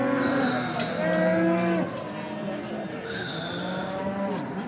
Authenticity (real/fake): real